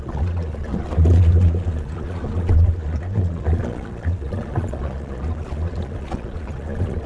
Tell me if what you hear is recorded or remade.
remade